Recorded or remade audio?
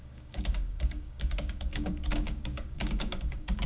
remade